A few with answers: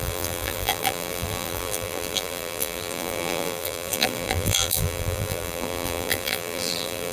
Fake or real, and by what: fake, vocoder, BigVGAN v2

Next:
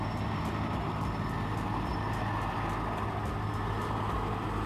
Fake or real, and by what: real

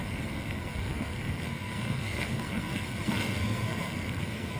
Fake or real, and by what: fake, codec, SNAC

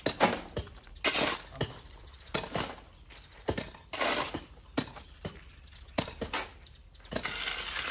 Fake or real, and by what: real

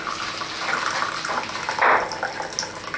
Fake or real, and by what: real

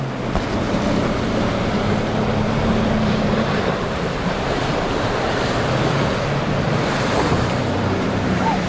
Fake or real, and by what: fake, vocoder, BigVGAN v2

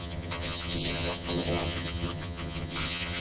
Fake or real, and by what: fake, vocoder, HiFi-GAN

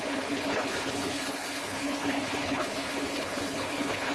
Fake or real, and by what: fake, codec, HILCodec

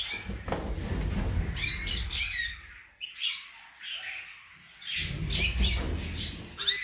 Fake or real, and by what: real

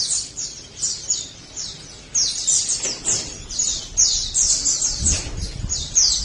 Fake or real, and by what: real